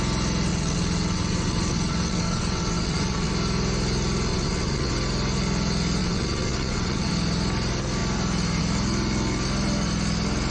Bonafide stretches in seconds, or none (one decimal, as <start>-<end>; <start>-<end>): 0.0-0.5; 3.3-4.3; 4.9-6.0; 7.1-10.5